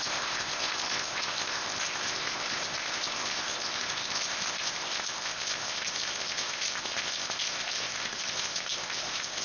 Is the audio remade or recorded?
remade